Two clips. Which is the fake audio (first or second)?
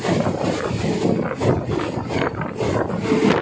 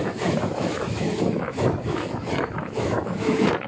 second